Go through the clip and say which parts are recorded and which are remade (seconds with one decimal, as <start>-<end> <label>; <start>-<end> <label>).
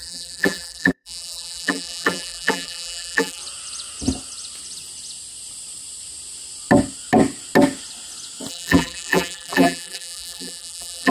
0.0-3.4 remade; 3.4-8.5 recorded; 8.5-11.1 remade